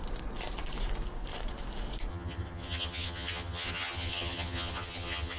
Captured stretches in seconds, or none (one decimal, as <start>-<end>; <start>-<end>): 0.0-2.1